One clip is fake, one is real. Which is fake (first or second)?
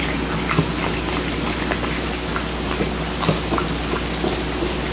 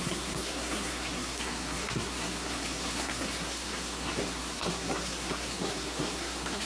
second